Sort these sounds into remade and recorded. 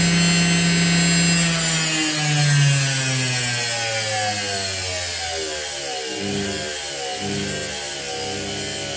recorded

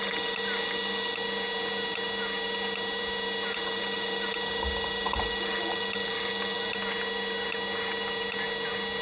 recorded